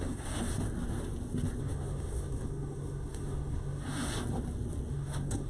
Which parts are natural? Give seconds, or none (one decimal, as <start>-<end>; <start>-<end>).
0.5-1.6; 4.1-4.9